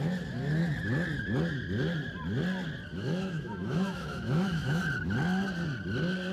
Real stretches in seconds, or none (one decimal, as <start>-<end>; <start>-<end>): 0.0-2.9; 4.8-6.3